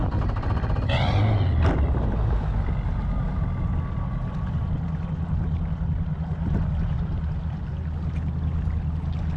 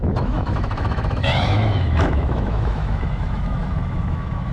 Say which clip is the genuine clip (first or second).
first